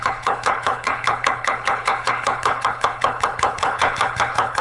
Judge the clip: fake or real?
fake